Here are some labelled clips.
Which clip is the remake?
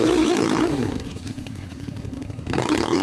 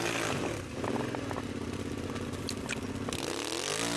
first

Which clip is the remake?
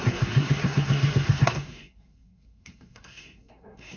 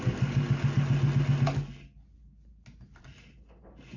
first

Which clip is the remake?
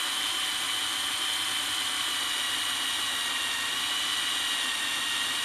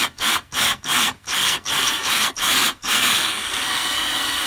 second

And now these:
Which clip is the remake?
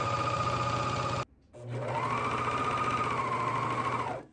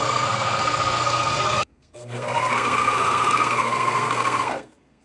second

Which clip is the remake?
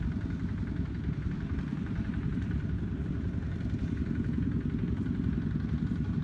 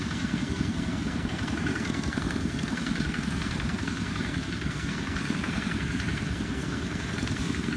second